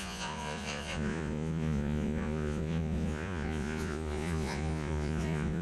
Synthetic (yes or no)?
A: yes